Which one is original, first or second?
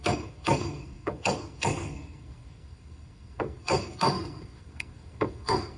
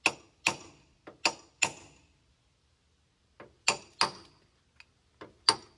second